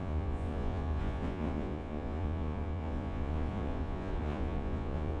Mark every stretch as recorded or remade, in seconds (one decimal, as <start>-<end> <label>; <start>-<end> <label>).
0.0-5.2 remade